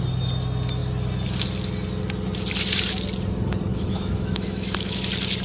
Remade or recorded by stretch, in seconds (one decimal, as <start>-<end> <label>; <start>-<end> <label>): 0.0-3.7 recorded; 3.7-5.0 remade; 5.0-5.4 recorded